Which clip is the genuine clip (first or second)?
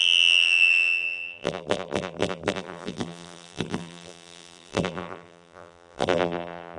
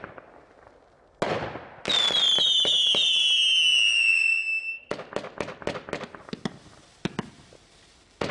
second